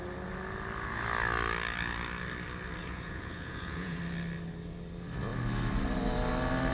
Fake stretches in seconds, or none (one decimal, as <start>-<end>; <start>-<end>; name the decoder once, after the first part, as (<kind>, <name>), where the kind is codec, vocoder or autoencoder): 2.8-4.0 (vocoder, Vocos)